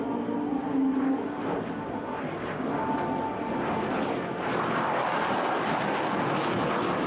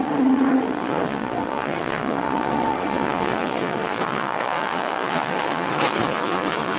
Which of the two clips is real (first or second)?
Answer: first